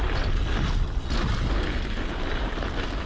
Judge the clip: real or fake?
real